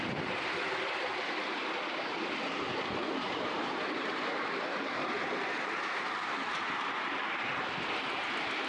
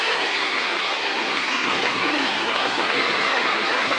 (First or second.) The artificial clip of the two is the second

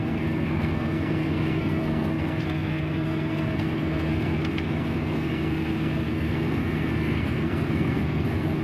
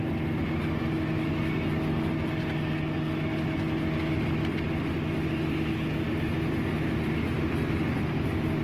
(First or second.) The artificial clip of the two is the first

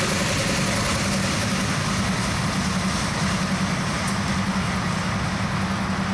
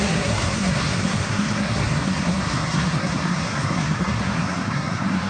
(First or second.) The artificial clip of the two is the second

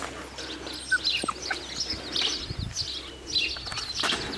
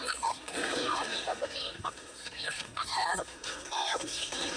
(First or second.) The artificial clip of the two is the second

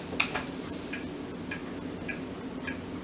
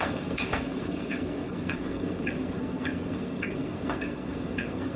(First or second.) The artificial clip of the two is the second